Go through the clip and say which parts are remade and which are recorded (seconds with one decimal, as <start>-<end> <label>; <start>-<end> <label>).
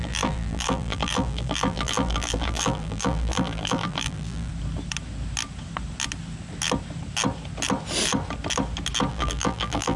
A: 0.0-4.5 remade; 4.5-9.1 recorded; 9.1-10.0 remade